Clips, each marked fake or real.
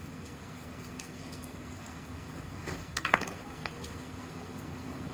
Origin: fake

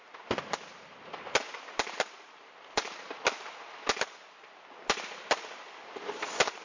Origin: real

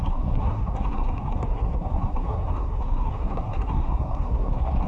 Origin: fake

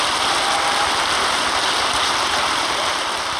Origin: fake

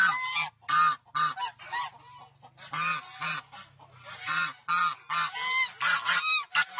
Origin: real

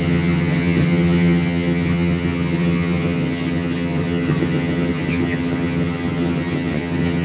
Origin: fake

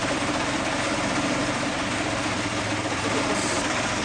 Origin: fake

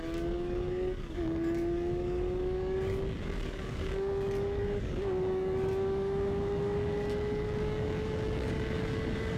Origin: fake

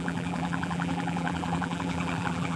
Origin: fake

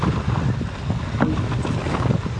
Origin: real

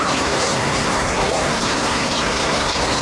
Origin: fake